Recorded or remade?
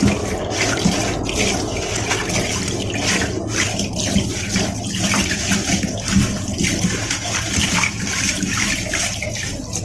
recorded